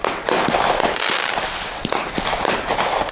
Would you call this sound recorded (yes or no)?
yes